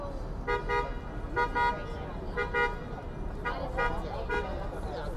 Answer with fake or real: real